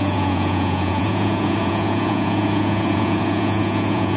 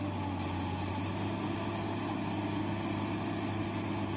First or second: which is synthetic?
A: first